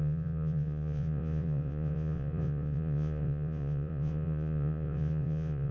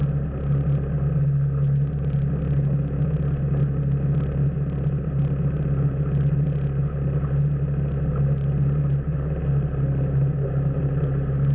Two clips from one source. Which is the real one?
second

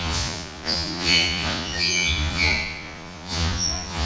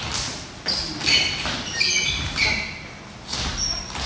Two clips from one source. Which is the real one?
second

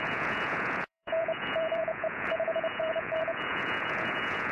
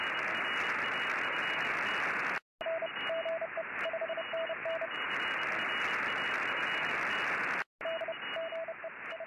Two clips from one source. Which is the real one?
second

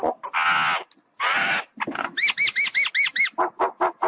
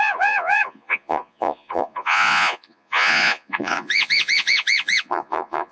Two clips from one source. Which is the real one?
first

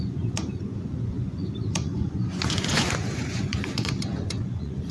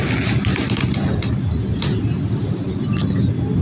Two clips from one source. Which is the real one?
second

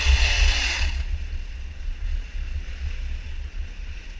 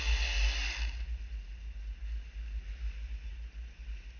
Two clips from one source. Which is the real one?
second